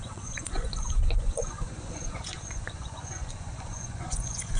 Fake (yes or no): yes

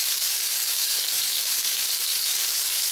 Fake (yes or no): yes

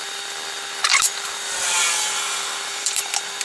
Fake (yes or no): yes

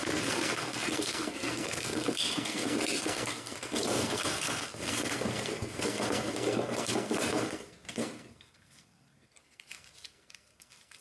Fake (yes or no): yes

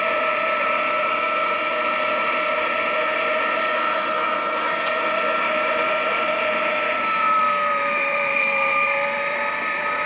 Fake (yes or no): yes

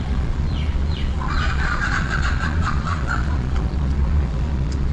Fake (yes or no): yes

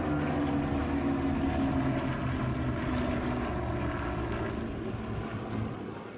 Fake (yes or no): no